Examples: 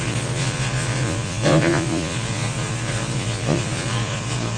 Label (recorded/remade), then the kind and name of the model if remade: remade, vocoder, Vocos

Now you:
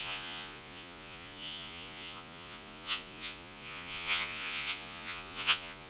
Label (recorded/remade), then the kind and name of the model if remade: remade, vocoder, Vocos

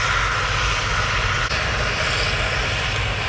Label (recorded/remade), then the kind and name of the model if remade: recorded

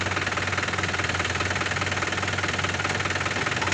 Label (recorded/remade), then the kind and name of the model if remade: recorded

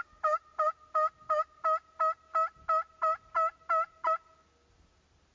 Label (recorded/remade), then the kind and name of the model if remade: recorded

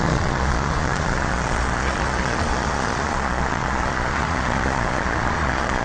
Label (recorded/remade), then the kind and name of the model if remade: remade, vocoder, Vocos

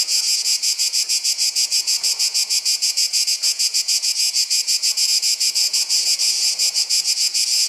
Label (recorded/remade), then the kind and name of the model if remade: remade, vocoder, Vocos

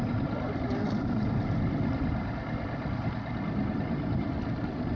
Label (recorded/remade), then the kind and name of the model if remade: recorded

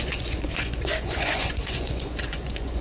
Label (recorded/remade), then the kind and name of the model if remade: remade, vocoder, Vocos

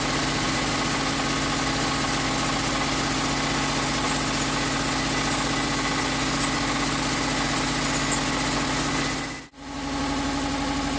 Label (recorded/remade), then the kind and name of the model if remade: recorded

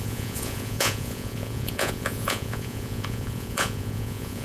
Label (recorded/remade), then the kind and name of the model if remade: remade, vocoder, Vocos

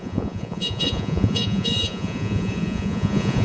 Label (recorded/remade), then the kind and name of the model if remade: remade, vocoder, Vocos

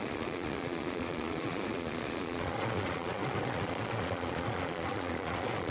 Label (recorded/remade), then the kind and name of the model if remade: remade, vocoder, Vocos